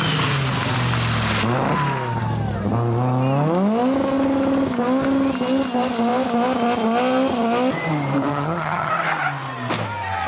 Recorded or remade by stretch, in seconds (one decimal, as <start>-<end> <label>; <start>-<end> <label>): 0.0-8.3 recorded; 8.3-8.9 remade; 8.9-10.3 recorded